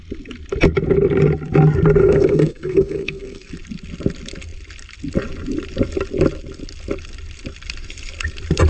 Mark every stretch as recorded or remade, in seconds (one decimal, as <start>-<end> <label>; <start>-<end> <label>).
0.0-2.0 recorded; 2.0-3.5 remade; 3.5-8.7 recorded

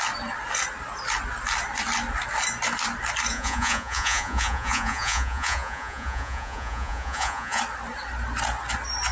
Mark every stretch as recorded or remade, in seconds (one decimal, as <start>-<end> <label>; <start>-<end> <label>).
0.0-3.3 recorded; 3.3-7.6 remade; 7.6-9.1 recorded

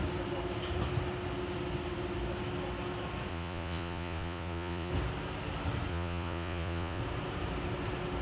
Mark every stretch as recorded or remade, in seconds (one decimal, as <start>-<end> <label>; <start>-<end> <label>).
0.0-3.3 recorded; 3.3-4.9 remade; 4.9-5.9 recorded; 5.9-7.0 remade; 7.0-8.2 recorded